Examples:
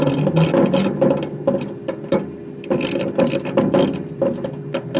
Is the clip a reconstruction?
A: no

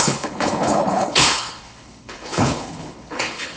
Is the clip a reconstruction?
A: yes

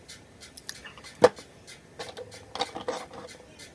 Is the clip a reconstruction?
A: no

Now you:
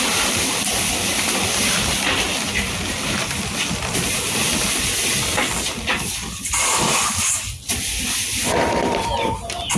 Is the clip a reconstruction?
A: no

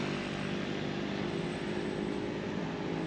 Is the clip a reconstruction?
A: no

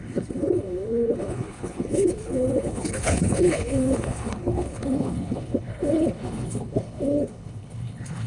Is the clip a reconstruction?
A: yes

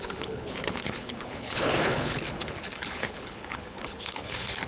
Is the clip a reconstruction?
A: yes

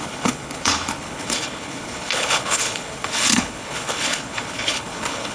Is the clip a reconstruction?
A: yes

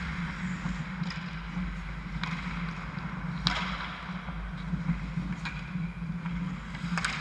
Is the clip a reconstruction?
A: no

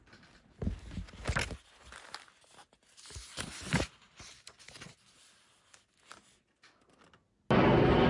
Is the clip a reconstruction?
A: no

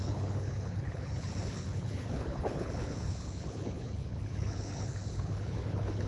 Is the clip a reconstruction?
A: yes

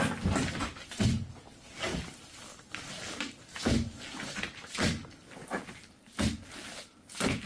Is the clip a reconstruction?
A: no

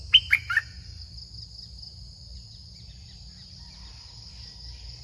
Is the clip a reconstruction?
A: no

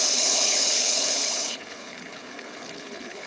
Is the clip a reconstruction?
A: yes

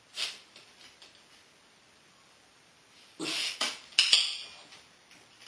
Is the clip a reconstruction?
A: no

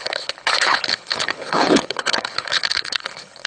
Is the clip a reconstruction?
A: yes